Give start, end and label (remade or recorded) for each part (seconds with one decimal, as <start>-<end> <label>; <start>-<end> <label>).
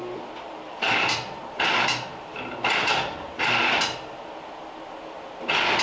0.0-1.4 remade; 1.4-2.1 recorded; 2.1-4.6 remade; 4.6-5.8 recorded